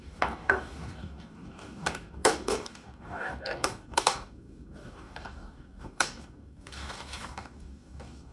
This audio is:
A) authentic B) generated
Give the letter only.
B